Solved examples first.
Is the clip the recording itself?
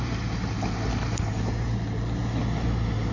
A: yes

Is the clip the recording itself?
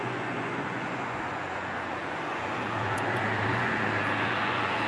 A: no